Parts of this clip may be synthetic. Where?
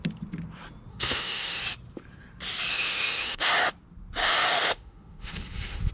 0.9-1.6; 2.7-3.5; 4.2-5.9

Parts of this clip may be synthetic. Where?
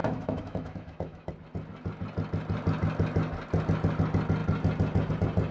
0.0-1.3